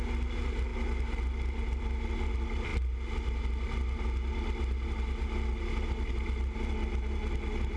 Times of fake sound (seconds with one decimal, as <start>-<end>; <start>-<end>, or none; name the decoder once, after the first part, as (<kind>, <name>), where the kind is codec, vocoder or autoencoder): none